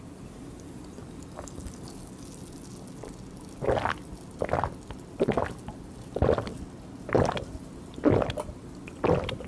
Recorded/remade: recorded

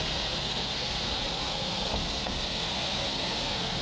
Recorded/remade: remade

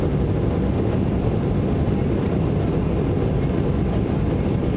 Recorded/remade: recorded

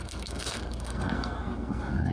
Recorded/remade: remade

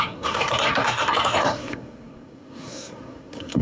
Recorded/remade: remade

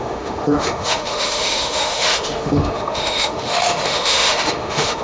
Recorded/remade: remade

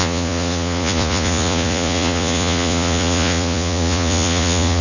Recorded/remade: remade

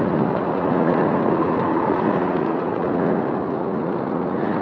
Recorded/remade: remade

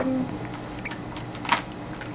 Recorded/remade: recorded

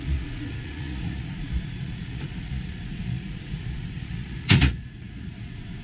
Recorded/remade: remade